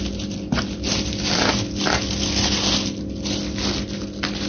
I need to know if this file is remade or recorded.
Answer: recorded